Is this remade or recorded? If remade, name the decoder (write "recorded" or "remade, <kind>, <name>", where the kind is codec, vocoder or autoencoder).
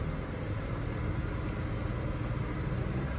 recorded